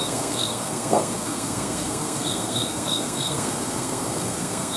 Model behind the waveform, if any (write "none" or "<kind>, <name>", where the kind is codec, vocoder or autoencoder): codec, SNAC